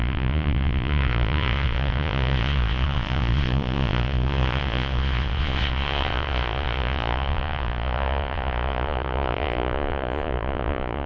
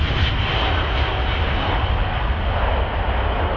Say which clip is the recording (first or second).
second